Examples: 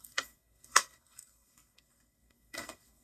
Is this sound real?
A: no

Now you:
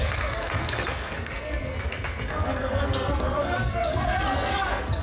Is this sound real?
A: no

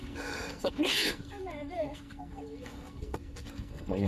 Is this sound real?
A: no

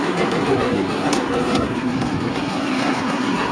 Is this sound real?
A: no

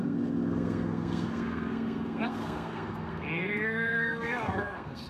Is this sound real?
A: no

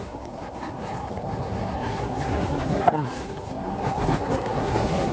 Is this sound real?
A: no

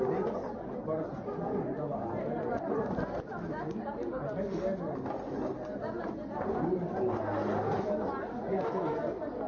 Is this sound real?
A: yes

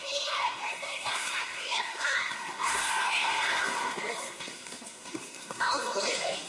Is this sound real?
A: no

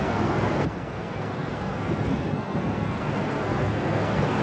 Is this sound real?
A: no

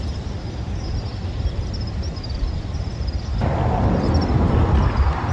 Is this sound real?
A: yes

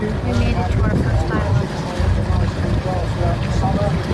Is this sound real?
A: yes